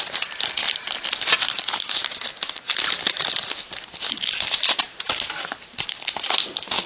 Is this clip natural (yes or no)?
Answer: yes